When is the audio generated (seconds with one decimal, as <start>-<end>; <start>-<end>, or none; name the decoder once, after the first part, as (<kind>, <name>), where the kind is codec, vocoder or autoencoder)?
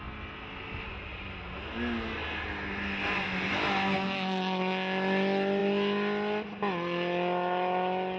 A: none